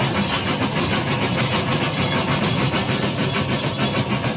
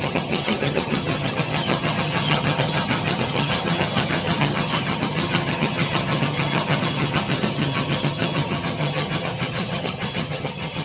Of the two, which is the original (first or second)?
first